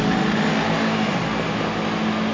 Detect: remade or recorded recorded